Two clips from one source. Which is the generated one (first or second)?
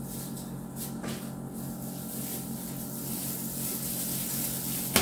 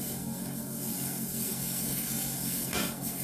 second